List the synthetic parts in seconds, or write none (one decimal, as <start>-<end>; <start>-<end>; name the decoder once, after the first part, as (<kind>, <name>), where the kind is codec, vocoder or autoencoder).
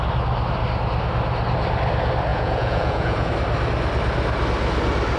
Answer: 2.3-3.3 (vocoder, Vocos)